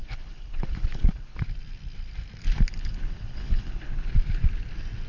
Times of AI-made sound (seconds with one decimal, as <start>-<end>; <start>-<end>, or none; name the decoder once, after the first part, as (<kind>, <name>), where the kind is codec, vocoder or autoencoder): 0.0-1.4 (codec, HILCodec); 2.7-4.1